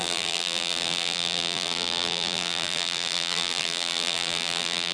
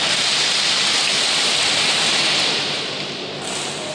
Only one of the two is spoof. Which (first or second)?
first